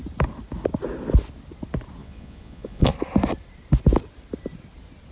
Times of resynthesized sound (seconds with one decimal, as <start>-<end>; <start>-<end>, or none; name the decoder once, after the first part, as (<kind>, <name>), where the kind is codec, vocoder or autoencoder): 2.0-2.9 (vocoder, Vocos)